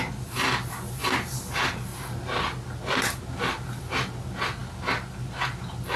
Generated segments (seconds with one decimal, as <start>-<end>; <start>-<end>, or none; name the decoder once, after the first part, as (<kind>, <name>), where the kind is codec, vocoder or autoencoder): 1.9-3.2 (vocoder, BigVGAN v2)